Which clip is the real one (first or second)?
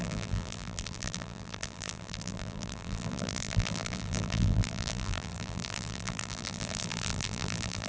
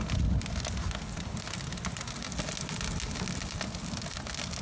second